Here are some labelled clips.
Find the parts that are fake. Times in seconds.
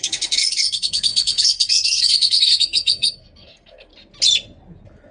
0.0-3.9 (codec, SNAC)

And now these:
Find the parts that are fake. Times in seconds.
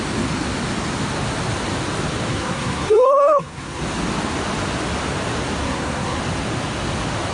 2.3-3.8 (codec, SNAC); 5.6-6.2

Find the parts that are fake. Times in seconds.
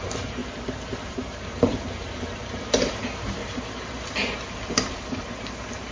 0.0-0.4 (vocoder, BigVGAN v2); 1.1-5.9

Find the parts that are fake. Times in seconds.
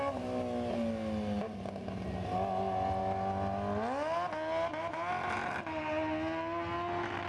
none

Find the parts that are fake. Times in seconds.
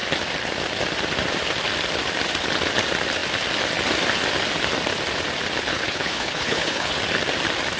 5.7-7.0 (codec, HILCodec)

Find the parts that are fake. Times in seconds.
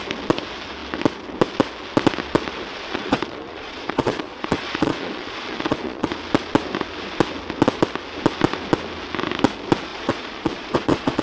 2.7-6.1 (vocoder, Vocos); 9.9-11.2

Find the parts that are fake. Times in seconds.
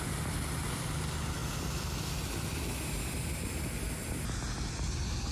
none